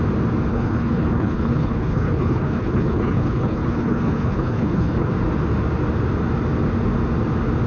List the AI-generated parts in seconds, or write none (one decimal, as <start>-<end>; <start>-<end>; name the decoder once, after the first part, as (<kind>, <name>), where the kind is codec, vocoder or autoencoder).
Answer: 0.5-5.1 (codec, HILCodec)